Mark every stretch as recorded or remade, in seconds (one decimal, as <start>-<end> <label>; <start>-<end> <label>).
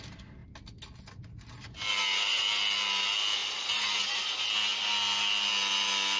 0.0-6.2 recorded